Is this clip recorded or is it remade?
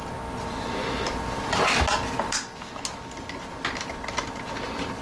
recorded